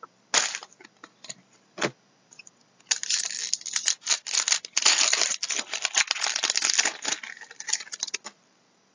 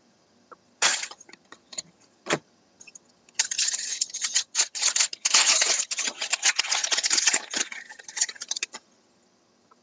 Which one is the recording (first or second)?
first